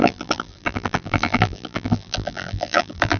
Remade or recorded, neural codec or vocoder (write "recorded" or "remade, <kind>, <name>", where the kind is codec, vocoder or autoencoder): remade, vocoder, BigVGAN v2